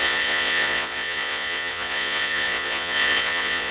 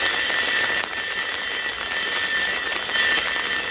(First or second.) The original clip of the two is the second